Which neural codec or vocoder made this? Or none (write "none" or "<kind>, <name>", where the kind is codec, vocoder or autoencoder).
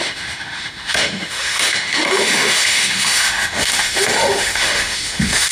autoencoder, DAC-VAE